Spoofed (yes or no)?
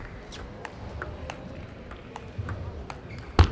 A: no